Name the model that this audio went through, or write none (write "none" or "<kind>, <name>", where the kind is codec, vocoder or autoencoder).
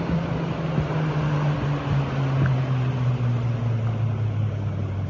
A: none